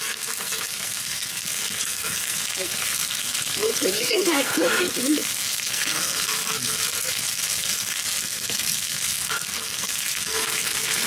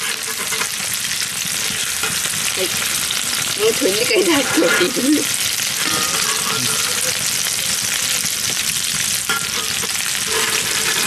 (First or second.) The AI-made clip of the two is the first